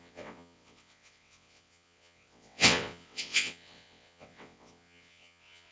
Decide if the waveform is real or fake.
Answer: fake